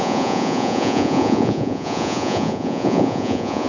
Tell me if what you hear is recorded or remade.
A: remade